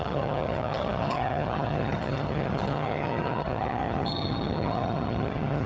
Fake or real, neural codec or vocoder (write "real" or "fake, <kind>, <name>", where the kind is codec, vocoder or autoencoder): fake, vocoder, HiFi-GAN